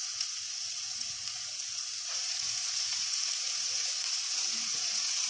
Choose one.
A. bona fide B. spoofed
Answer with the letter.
B